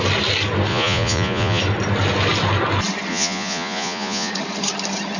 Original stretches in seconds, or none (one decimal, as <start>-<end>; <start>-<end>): 0.0-0.7; 1.6-3.1; 4.3-5.2